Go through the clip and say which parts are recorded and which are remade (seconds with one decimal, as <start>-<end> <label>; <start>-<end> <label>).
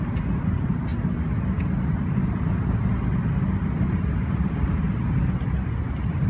0.0-6.3 recorded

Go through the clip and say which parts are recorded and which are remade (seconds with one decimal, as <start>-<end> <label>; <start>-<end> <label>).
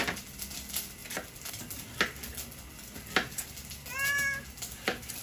0.0-5.2 recorded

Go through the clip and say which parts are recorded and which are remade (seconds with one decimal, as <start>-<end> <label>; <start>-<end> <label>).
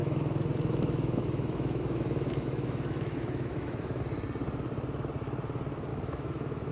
0.0-4.0 remade; 4.0-5.9 recorded; 5.9-6.7 remade